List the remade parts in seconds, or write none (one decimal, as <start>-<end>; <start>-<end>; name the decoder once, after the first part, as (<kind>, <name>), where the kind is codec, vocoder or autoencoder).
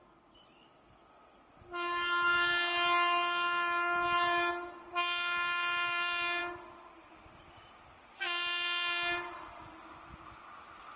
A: none